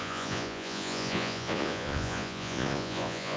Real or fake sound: fake